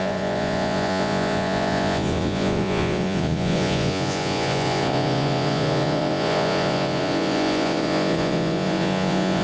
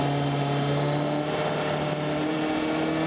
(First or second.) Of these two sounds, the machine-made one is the first